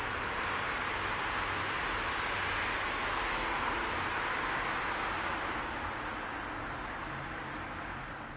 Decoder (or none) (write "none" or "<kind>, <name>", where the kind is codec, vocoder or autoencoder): none